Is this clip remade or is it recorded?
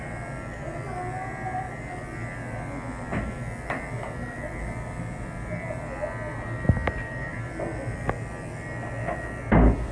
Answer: recorded